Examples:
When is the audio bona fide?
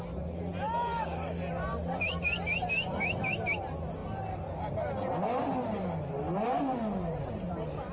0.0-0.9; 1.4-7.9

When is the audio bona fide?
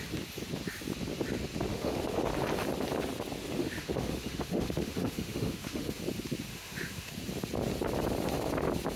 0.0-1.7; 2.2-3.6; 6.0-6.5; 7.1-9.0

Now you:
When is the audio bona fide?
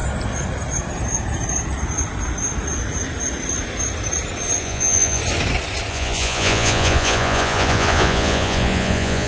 0.0-4.6; 5.2-5.9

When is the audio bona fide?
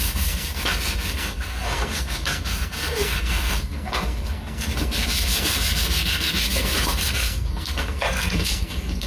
none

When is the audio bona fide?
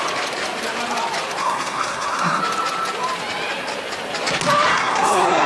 0.0-1.4; 2.4-4.7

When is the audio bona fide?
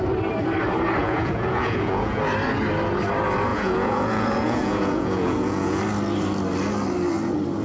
0.0-1.0; 2.2-3.5; 5.8-7.6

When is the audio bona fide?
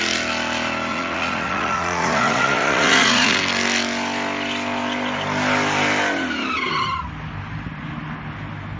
0.0-0.9; 3.4-8.8